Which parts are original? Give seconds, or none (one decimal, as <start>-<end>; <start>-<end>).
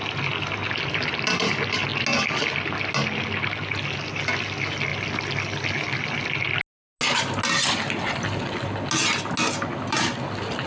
0.0-10.7